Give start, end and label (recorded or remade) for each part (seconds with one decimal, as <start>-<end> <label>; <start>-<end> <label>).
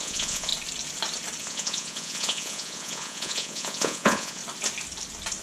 0.0-0.5 remade; 0.5-1.4 recorded; 1.4-4.4 remade; 4.4-5.4 recorded